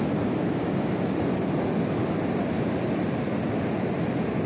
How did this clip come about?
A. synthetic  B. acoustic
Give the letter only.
B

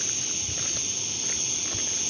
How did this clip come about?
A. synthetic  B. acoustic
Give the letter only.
B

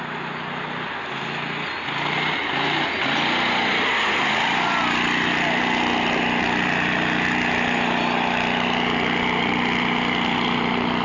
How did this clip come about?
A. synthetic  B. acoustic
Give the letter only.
B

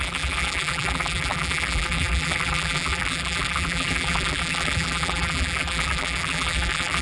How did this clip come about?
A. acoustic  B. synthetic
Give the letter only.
B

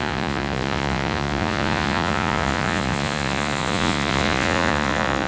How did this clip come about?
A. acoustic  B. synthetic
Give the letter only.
B